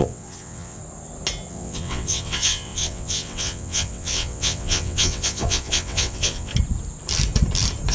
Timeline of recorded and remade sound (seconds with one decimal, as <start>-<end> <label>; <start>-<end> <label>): 0.0-0.8 remade; 0.8-1.5 recorded; 1.5-6.5 remade; 6.5-7.9 recorded